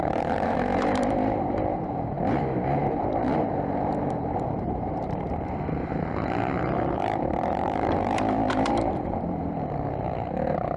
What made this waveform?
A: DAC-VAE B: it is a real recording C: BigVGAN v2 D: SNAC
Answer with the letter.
C